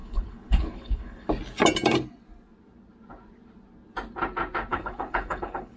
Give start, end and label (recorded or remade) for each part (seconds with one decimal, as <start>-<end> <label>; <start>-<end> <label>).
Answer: 0.0-1.3 remade; 1.3-4.7 recorded; 4.7-5.8 remade